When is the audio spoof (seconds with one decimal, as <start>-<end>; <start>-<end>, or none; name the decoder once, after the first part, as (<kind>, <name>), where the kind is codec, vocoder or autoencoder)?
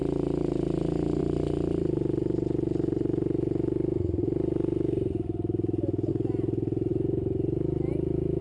none